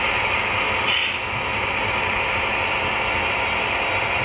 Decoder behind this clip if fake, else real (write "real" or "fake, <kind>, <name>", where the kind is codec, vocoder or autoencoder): real